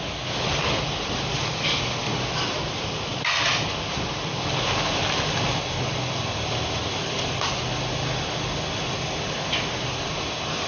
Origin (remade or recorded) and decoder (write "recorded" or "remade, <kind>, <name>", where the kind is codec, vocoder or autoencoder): recorded